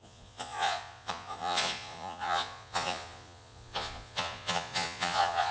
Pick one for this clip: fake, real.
fake